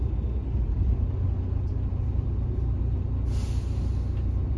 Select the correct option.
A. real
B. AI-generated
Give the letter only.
A